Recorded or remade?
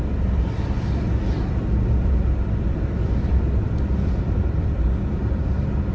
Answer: remade